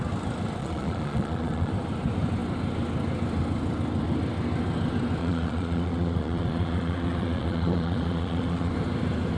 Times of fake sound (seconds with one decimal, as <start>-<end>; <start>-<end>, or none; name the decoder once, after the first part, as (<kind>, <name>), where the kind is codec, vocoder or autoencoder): 0.6-1.7 (vocoder, Vocos); 5.2-8.7